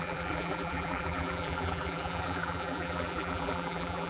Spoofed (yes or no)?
yes